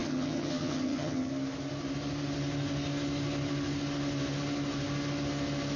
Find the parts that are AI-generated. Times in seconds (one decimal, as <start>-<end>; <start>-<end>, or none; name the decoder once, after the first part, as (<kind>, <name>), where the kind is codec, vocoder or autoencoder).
0.0-1.3 (vocoder, HiFi-GAN)